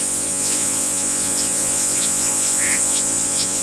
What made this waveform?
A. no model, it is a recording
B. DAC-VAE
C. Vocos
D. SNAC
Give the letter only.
C